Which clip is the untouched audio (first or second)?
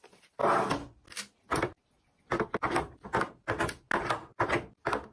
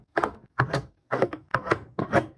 first